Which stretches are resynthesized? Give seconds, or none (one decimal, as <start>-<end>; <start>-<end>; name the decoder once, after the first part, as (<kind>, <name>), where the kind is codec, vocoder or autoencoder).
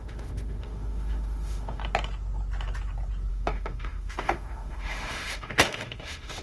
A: 0.0-1.8 (autoencoder, DAC-VAE); 3.3-6.4